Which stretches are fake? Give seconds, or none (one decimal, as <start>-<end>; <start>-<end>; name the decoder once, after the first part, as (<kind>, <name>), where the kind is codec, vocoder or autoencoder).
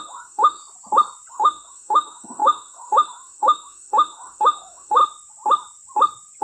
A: 0.0-0.6 (autoencoder, DAC-VAE); 1.3-5.0